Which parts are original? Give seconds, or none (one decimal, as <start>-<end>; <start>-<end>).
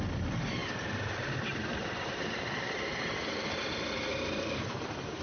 0.0-0.6; 3.1-4.1